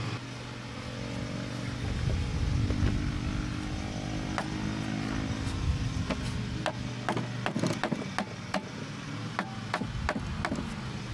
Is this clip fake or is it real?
real